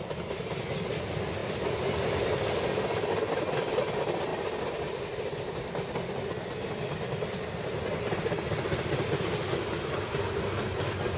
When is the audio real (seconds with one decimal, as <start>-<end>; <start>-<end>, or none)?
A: 0.0-11.2